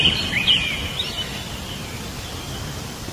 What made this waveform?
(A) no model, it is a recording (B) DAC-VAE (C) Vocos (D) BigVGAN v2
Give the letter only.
D